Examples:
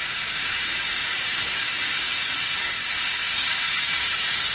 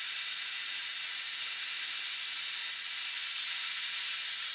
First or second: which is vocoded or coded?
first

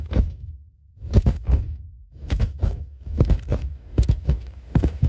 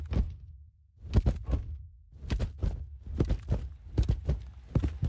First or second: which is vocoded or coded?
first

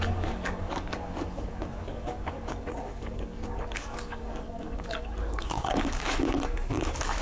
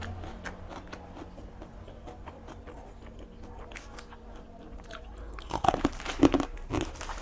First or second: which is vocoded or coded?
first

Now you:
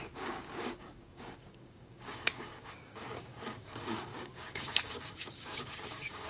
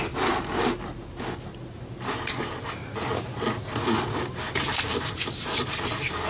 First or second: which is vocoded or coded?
first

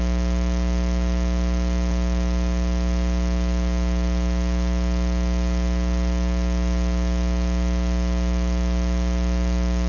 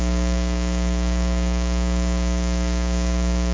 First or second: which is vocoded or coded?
second